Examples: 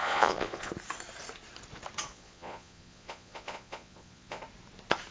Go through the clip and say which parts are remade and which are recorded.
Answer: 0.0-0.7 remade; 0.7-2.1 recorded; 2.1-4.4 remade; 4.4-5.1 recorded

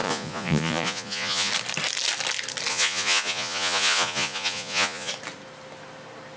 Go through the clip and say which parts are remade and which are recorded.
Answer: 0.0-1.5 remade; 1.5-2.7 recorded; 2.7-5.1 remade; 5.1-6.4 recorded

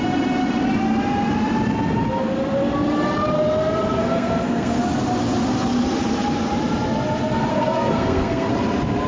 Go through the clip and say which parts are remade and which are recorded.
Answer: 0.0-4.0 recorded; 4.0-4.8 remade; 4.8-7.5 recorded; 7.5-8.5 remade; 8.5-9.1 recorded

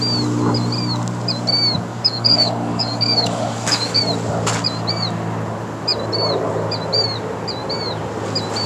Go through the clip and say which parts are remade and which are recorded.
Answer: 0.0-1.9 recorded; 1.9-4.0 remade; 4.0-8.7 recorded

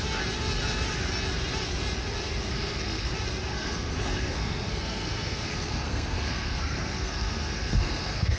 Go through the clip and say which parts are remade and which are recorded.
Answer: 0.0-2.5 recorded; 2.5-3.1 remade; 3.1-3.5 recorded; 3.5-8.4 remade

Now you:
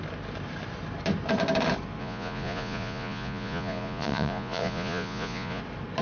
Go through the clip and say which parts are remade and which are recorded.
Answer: 0.0-2.0 recorded; 2.0-5.6 remade; 5.6-6.0 recorded